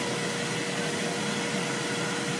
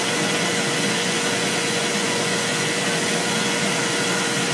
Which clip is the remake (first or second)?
second